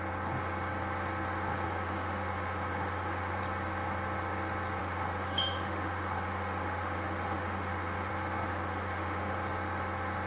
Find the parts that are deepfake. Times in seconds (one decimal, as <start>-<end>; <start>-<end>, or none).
1.5-3.4; 4.8-8.1; 8.5-9.3